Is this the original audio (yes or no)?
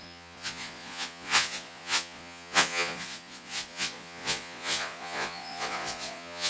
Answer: no